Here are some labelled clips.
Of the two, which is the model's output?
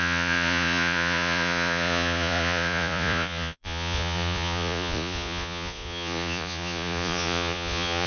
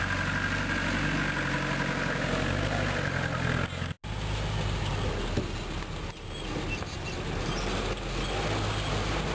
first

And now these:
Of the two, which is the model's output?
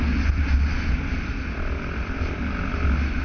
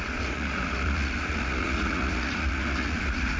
second